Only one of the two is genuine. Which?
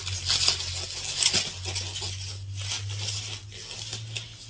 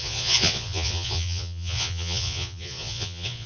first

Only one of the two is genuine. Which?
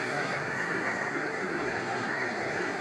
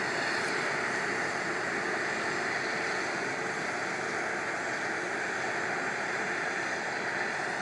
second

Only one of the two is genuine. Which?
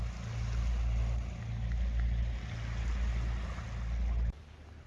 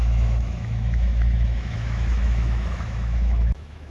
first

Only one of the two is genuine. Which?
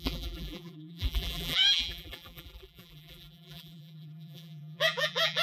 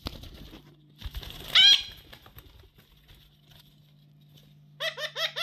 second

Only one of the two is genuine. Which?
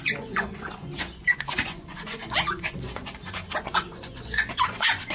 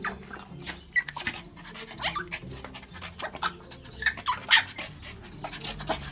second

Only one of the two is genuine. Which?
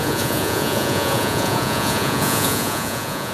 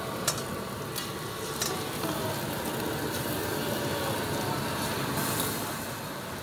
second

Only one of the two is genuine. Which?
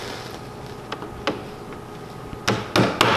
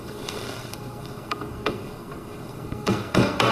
first